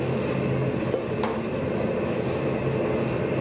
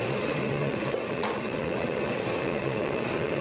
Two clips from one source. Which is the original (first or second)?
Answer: first